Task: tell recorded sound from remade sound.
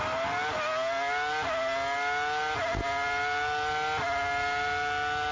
recorded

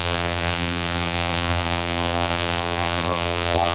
remade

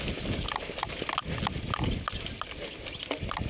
recorded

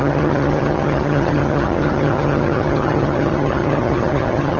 remade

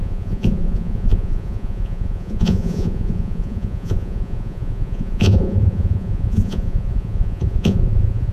remade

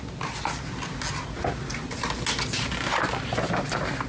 recorded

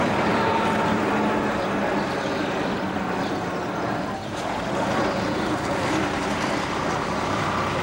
remade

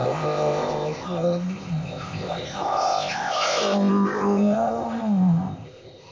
remade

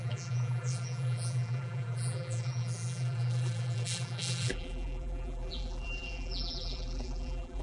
remade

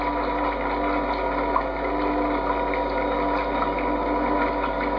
recorded